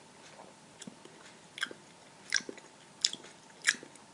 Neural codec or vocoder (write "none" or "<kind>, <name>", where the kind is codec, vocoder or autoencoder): none